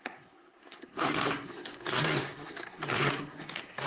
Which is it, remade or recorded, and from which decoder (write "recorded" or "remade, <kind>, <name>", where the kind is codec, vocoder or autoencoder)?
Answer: remade, codec, SNAC